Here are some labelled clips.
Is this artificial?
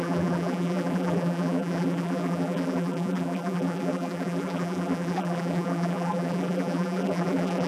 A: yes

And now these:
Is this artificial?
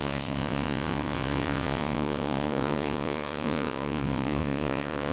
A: yes